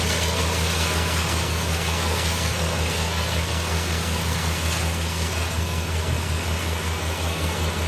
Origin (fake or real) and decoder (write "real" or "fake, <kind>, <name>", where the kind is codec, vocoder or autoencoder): fake, codec, SNAC